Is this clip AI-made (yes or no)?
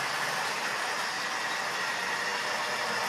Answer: no